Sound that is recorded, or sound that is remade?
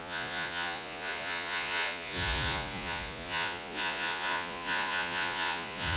remade